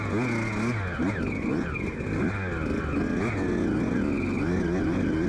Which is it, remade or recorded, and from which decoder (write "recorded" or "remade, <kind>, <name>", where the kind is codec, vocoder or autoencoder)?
recorded